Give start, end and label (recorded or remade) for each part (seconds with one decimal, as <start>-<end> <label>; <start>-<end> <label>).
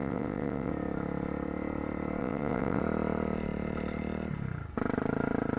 0.0-0.7 remade; 0.7-2.2 recorded; 2.2-2.8 remade; 2.8-5.6 recorded